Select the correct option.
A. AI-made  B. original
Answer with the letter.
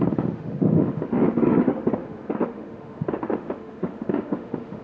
A